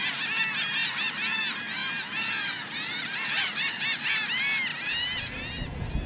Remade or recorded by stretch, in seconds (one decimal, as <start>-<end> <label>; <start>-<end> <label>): 0.0-0.8 recorded; 0.8-1.4 remade; 1.4-1.8 recorded; 1.8-4.1 remade; 4.1-4.7 recorded; 4.7-5.3 remade; 5.3-6.1 recorded